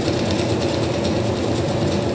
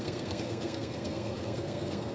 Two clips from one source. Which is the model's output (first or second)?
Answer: second